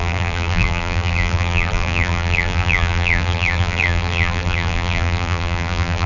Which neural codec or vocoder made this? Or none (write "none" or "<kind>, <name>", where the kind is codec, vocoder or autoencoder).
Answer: vocoder, BigVGAN v2